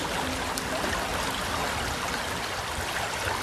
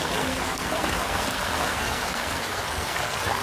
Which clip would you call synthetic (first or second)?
second